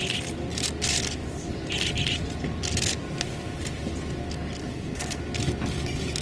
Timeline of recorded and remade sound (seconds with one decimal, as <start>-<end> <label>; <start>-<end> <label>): 0.0-4.6 recorded; 4.6-5.2 remade; 5.2-6.2 recorded

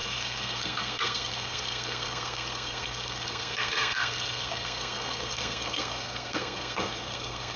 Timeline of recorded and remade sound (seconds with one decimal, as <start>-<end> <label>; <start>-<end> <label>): 0.0-7.6 remade

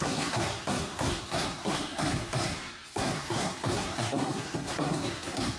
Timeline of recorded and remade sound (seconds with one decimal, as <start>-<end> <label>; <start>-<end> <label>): 0.0-5.6 remade